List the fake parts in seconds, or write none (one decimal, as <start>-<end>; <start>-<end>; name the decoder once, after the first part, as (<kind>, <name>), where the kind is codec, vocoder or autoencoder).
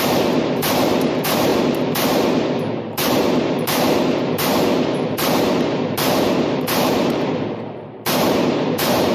0.0-9.1 (vocoder, BigVGAN v2)